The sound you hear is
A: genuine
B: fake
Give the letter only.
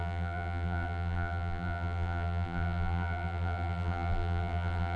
B